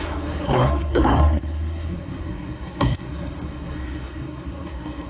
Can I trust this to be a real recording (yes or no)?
no